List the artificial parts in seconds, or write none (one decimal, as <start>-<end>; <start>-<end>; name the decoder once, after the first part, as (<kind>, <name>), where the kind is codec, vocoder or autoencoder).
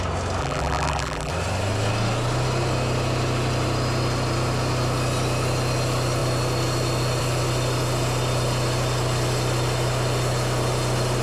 0.4-1.3 (vocoder, BigVGAN v2)